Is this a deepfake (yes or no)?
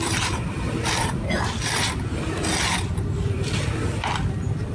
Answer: yes